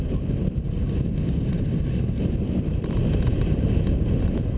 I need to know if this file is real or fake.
real